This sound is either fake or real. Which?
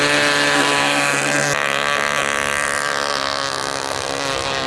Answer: real